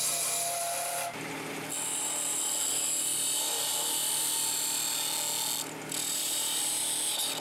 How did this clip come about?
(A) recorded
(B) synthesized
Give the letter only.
A